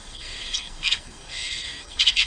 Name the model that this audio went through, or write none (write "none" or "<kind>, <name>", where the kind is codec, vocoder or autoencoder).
codec, SNAC